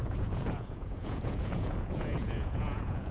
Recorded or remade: remade